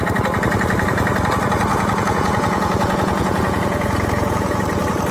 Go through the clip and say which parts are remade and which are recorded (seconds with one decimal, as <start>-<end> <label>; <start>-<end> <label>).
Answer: 0.0-1.7 recorded; 1.7-4.6 remade; 4.6-5.1 recorded